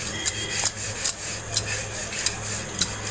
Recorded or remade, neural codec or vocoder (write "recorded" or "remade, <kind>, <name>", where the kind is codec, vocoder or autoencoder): recorded